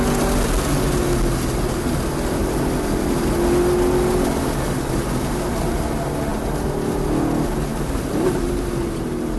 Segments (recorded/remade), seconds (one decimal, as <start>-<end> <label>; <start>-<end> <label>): 0.0-2.4 recorded; 2.4-3.3 remade; 3.3-7.7 recorded; 7.7-8.7 remade; 8.7-9.4 recorded